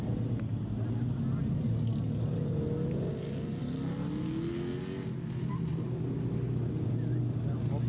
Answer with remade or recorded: recorded